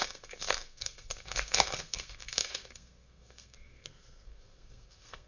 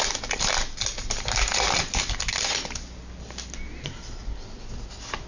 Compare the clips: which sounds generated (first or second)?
first